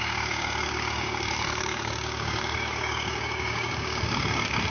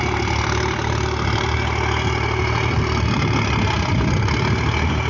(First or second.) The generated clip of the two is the first